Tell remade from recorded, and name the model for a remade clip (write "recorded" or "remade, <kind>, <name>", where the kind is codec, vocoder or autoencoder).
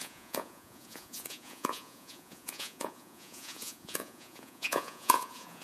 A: remade, vocoder, Vocos